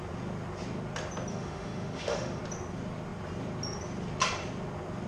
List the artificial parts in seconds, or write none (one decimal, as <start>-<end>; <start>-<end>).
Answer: 1.3-2.4